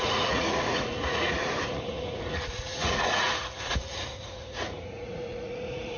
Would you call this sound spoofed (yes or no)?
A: yes